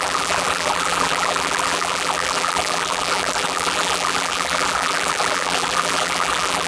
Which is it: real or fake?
fake